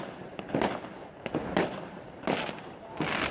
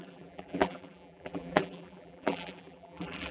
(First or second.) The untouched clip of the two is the first